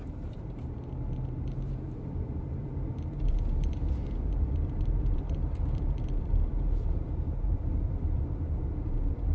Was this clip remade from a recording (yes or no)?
yes